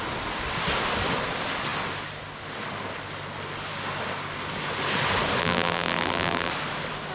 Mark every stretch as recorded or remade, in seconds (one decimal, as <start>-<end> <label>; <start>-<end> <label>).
0.0-5.4 recorded; 5.4-6.5 remade; 6.5-7.1 recorded